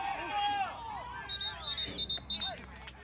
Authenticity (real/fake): real